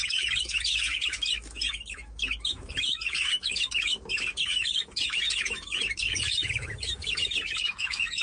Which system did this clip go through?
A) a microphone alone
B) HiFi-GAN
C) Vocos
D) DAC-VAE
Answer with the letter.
D